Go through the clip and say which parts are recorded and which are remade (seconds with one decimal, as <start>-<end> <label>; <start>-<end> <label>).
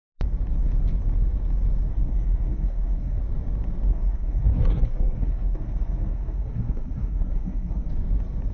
0.0-1.9 recorded; 1.9-3.2 remade; 3.2-3.9 recorded; 3.9-7.9 remade; 7.9-8.5 recorded